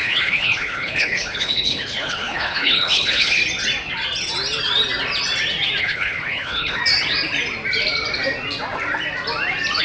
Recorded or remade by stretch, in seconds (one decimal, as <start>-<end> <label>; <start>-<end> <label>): 0.0-3.4 remade; 3.4-5.8 recorded; 5.8-6.8 remade; 6.8-9.8 recorded